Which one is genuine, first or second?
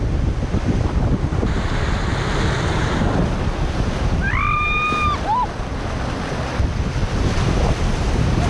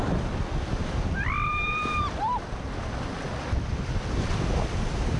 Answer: first